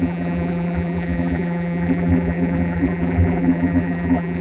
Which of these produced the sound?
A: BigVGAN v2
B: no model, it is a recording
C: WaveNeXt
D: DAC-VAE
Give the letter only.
A